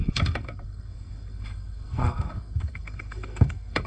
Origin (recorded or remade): remade